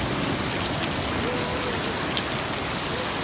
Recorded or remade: recorded